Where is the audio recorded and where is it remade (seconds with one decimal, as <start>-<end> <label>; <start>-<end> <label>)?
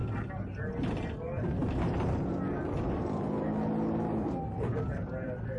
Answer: 0.0-5.6 recorded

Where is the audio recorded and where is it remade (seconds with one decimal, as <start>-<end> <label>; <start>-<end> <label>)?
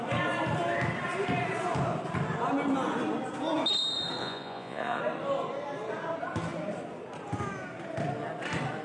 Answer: 0.0-4.2 recorded; 4.2-5.0 remade; 5.0-8.8 recorded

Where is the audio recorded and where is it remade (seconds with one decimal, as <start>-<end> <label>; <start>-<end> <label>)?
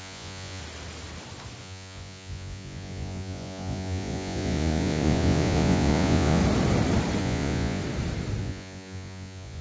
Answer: 0.0-0.6 remade; 0.6-1.6 recorded; 1.6-6.4 remade; 6.4-7.2 recorded; 7.2-7.8 remade; 7.8-8.4 recorded; 8.4-9.6 remade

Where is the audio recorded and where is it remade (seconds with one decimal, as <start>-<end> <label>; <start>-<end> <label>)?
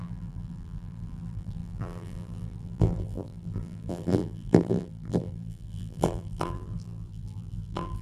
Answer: 0.0-8.0 remade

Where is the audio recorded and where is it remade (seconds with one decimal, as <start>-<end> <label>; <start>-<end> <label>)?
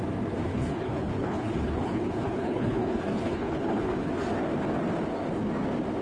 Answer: 0.0-0.5 recorded; 0.5-4.1 remade; 4.1-6.0 recorded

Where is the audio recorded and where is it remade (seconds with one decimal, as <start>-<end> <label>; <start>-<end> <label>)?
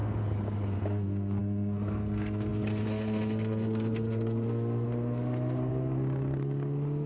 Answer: 0.0-7.1 remade